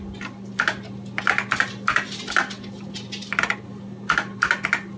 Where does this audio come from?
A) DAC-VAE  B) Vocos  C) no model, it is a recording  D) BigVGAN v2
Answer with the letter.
C